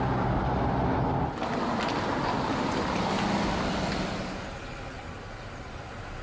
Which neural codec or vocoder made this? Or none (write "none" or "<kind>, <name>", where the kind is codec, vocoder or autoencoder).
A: none